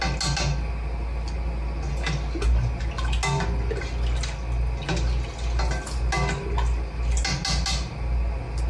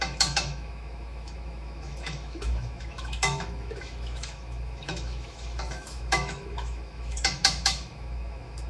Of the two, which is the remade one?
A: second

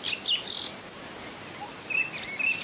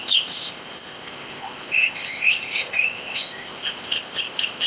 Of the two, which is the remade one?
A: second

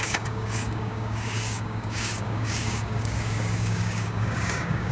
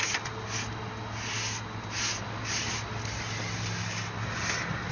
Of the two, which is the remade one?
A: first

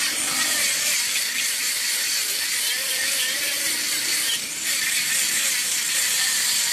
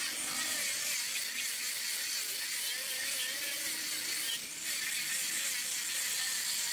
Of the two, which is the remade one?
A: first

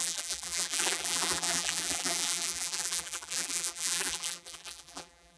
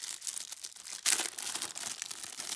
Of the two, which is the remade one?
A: first